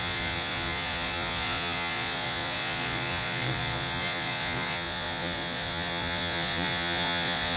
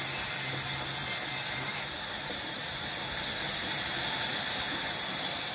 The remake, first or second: first